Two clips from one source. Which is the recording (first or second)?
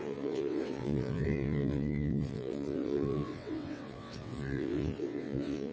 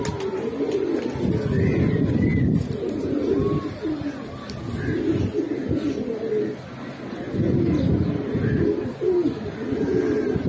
second